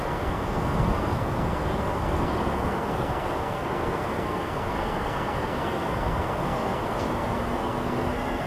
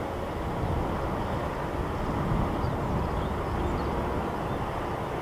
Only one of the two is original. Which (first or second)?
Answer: second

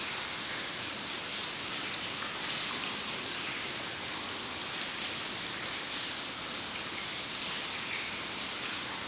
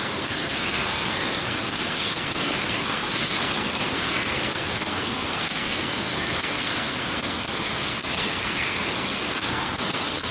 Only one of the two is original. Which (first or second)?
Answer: first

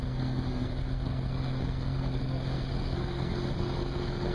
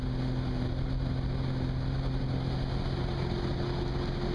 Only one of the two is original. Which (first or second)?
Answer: second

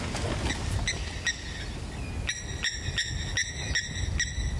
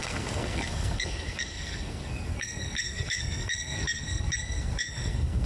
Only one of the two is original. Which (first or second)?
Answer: first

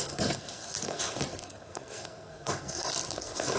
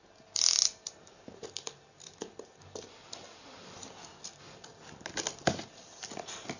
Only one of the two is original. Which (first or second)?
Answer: second